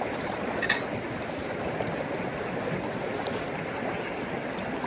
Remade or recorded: recorded